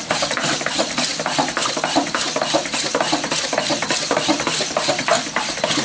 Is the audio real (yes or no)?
yes